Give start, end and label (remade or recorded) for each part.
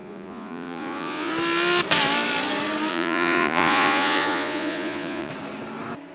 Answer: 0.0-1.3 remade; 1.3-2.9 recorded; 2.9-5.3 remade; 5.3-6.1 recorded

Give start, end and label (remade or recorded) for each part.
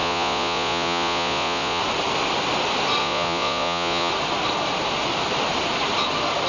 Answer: 0.0-1.8 remade; 1.8-3.0 recorded; 3.0-4.1 remade; 4.1-6.5 recorded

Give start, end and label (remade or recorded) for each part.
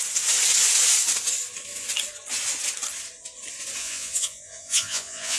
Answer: 0.0-3.8 recorded; 3.8-5.4 remade